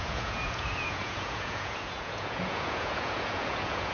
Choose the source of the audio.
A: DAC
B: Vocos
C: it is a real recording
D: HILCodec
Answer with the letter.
B